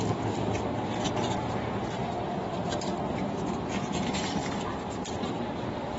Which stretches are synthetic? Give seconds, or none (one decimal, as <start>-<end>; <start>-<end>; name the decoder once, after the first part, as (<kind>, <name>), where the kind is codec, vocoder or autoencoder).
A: none